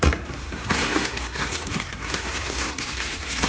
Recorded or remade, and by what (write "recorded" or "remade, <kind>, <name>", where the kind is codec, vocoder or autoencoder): remade, codec, SNAC